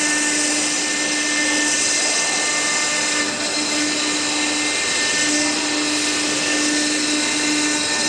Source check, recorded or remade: recorded